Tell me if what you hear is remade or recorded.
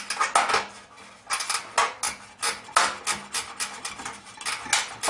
recorded